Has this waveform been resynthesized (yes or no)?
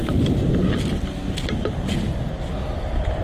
no